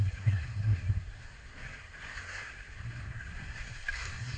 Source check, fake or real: fake